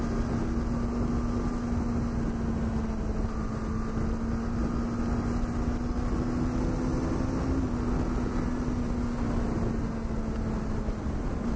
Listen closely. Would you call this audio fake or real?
real